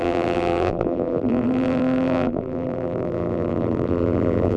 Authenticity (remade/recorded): remade